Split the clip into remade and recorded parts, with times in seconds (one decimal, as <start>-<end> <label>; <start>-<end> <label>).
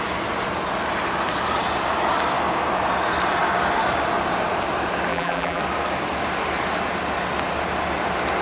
0.0-5.1 recorded; 5.1-5.6 remade; 5.6-8.4 recorded